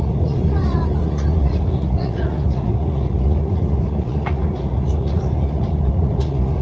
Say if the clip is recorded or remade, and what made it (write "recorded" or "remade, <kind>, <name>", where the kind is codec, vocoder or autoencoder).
remade, vocoder, Vocos